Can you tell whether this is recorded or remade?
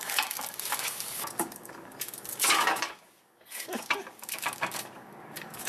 remade